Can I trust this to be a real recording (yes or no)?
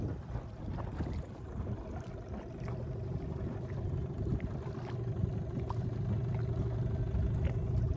yes